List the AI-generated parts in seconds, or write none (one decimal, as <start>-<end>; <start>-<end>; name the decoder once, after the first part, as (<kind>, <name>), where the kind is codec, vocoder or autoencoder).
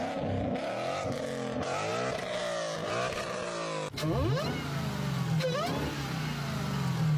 none